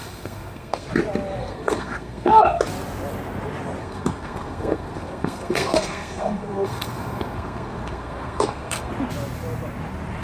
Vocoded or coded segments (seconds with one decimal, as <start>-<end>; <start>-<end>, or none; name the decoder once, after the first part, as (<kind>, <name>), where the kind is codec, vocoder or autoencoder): 0.0-0.9 (codec, SNAC); 1.4-2.6; 3.8-8.9